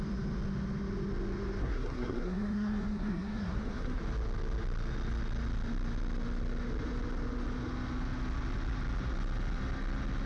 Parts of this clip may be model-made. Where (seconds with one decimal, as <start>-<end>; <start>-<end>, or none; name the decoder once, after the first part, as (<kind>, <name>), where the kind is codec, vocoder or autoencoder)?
1.6-4.0 (codec, SNAC)